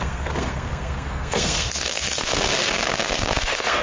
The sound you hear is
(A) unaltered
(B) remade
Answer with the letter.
B